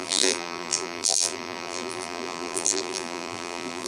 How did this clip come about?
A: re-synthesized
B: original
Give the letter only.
A